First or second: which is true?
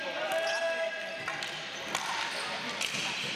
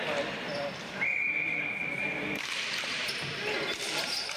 first